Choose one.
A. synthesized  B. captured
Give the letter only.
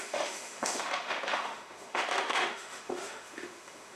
A